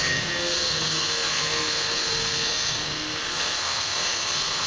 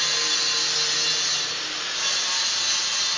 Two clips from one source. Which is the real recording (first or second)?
second